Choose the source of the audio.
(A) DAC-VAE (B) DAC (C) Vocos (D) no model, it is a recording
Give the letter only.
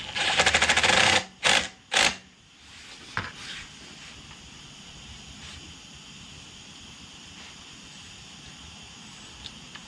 D